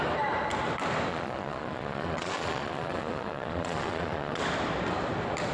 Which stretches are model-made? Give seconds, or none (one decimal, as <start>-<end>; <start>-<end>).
1.1-4.4